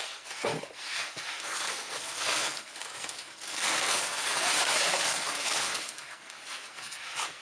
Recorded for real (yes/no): no